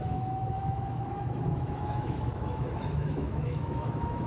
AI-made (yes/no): yes